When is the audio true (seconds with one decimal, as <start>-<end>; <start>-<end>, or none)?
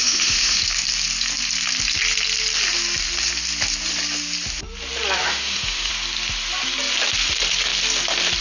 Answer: 0.6-5.2; 5.9-8.4